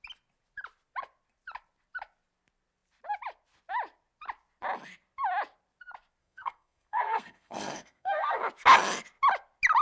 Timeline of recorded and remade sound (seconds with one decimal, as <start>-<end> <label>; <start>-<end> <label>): 0.0-6.2 recorded; 6.2-8.4 remade; 8.4-9.8 recorded

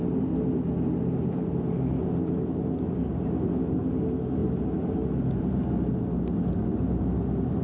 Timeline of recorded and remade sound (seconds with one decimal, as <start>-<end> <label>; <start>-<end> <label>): 0.0-7.6 recorded

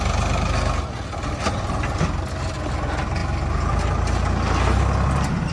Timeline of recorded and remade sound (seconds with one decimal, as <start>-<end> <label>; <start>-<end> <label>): 0.0-5.5 recorded

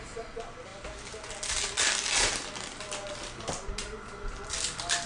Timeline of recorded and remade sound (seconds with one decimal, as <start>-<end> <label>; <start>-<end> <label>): 0.0-5.1 recorded